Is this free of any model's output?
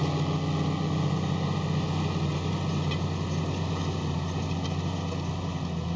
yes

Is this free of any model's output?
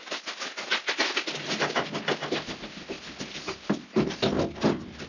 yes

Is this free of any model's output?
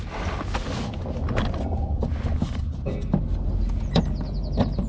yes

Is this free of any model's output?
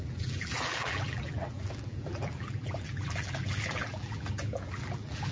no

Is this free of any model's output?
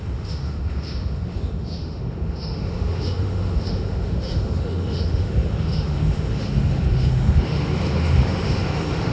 no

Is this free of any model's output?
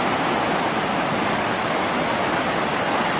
yes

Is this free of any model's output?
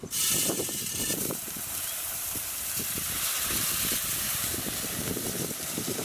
no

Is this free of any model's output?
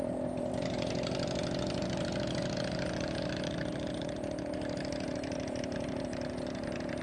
no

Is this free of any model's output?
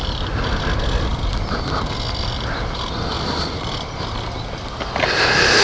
yes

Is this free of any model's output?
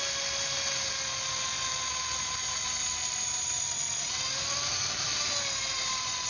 yes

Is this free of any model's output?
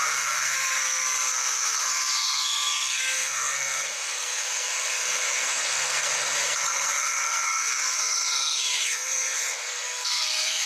no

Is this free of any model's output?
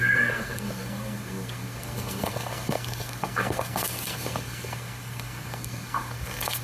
no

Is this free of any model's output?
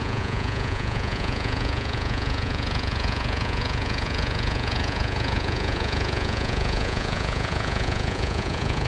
no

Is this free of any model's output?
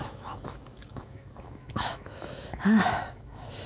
no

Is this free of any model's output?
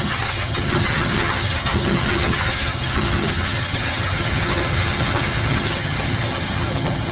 no